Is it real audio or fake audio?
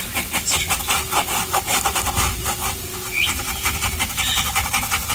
real